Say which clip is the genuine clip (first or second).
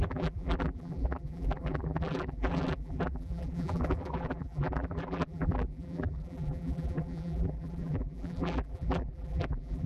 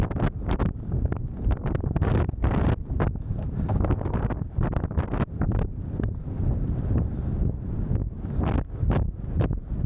second